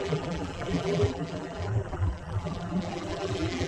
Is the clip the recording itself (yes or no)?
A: no